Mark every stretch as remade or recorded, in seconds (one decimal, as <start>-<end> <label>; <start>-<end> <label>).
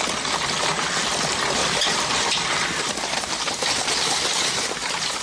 0.0-5.2 recorded